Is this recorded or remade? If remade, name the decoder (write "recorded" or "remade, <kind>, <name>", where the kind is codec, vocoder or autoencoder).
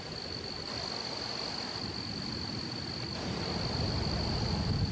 recorded